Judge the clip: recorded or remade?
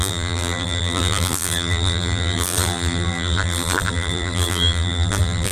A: remade